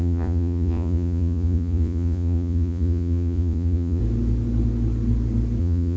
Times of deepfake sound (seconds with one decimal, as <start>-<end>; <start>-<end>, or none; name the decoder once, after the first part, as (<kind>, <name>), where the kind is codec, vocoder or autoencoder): 0.0-4.0 (vocoder, Vocos); 5.6-6.0